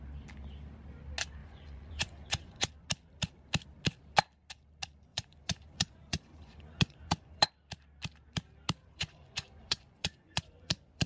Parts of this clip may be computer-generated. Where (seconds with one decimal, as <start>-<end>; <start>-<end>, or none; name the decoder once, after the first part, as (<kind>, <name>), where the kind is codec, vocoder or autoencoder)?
1.4-2.7 (vocoder, Vocos); 5.1-7.5; 8.8-11.1